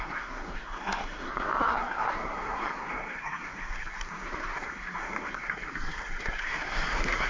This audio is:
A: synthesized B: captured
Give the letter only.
A